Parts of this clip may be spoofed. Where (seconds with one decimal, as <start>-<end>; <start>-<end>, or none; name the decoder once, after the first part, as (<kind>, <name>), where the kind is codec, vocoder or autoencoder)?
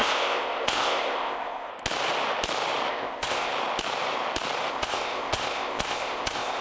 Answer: 0.0-1.7 (codec, ZipCodec); 2.9-3.5; 4.7-6.6